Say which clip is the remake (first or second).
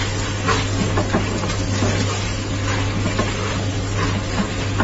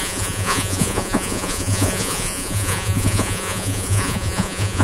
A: second